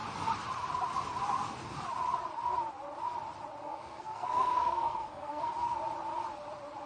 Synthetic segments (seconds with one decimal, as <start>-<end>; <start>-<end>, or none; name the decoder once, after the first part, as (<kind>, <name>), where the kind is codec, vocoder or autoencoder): 3.6-5.5 (codec, SNAC)